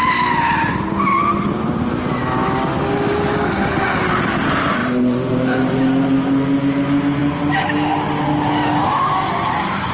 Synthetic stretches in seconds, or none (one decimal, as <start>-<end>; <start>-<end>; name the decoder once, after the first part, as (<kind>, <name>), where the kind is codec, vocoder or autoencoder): 4.8-5.8 (vocoder, BigVGAN v2)

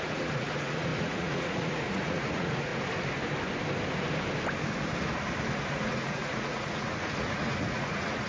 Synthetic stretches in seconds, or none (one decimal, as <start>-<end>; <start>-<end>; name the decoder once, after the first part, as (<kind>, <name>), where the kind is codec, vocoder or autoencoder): 0.0-2.7 (vocoder, Vocos); 5.7-8.3